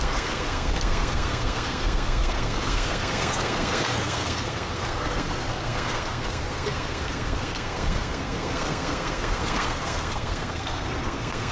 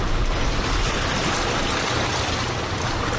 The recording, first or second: second